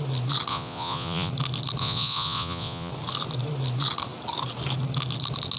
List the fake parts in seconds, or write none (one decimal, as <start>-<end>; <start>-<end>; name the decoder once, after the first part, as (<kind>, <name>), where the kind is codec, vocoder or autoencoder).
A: 0.5-1.3 (vocoder, Vocos); 1.8-2.9